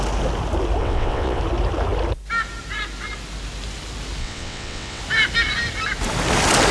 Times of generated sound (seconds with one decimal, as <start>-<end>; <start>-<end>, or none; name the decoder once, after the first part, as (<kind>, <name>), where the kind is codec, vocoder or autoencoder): 0.8-1.4 (vocoder, WaveNeXt); 4.2-5.0